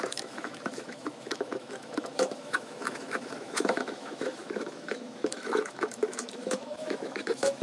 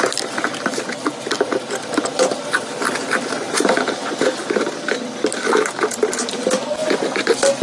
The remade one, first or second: first